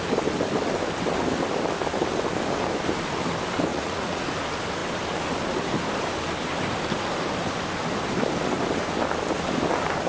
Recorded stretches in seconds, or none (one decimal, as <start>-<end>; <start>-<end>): 0.0-3.7; 4.2-10.1